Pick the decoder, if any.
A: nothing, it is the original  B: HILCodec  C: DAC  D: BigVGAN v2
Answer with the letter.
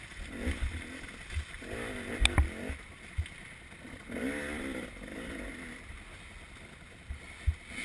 A